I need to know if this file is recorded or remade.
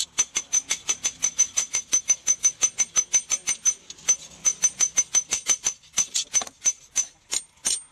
recorded